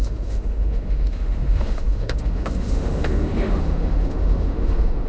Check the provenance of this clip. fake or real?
fake